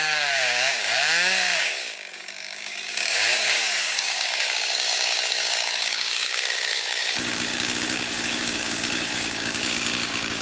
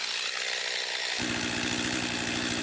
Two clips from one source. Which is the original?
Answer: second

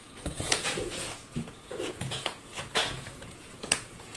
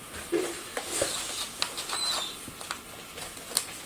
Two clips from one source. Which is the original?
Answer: second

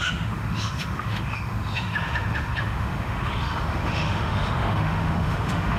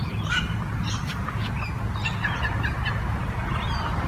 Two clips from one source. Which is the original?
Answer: second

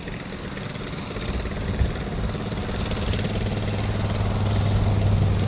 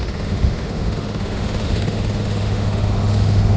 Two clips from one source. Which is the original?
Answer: first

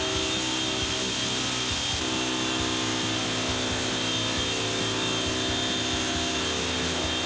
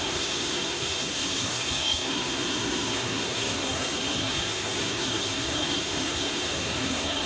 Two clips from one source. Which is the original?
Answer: first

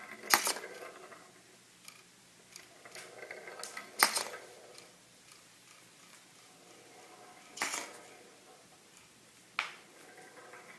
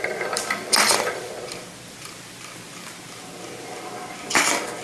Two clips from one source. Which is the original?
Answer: first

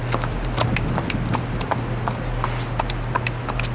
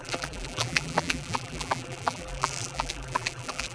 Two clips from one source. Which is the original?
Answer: first